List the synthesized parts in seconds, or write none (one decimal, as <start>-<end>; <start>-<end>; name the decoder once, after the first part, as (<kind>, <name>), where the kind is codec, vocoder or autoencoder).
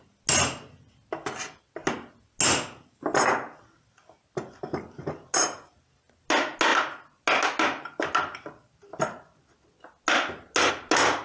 none